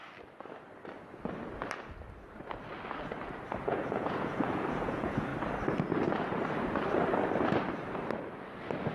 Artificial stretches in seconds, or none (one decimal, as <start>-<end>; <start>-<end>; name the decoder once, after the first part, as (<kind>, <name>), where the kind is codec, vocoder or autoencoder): 3.6-5.3 (vocoder, Vocos)